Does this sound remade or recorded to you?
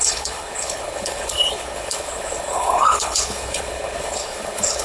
remade